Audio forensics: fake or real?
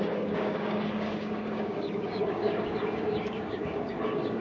fake